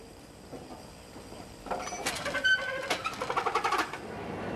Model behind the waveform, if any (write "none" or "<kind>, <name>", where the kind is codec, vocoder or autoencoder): none